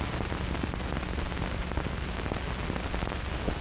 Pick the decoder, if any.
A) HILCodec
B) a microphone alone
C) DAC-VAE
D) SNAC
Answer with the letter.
B